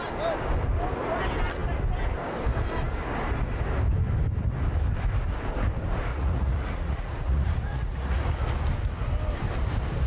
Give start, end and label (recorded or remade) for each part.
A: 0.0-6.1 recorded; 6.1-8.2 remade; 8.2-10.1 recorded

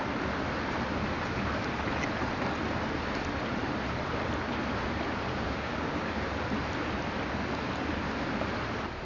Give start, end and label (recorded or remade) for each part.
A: 0.0-5.3 recorded; 5.3-6.3 remade; 6.3-9.1 recorded

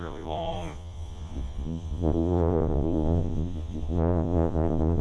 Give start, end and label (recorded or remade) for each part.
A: 0.0-5.0 remade

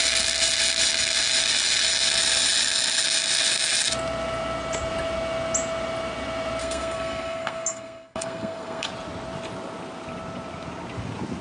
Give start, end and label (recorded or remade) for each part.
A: 0.0-6.6 recorded; 6.6-8.9 remade; 8.9-11.4 recorded

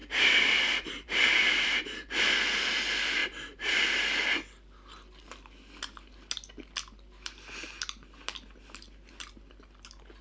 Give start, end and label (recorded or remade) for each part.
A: 0.0-2.3 remade; 2.3-10.2 recorded

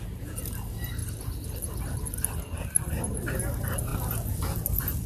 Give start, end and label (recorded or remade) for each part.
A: 0.0-5.1 recorded

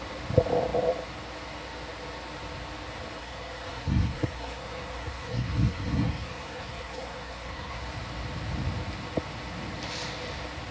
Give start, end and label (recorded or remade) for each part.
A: 0.0-3.2 recorded; 3.2-7.8 remade; 7.8-10.7 recorded